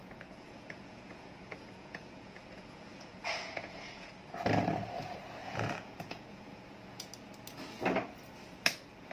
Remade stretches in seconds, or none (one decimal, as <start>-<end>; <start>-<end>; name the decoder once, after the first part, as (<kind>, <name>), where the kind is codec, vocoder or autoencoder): 0.0-4.1 (vocoder, Vocos); 5.4-7.1